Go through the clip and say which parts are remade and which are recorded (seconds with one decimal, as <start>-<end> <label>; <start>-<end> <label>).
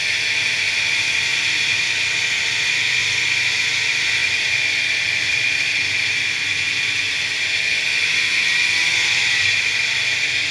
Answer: 0.0-4.2 recorded; 4.2-6.3 remade; 6.3-10.5 recorded